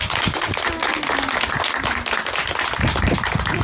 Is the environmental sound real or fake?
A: real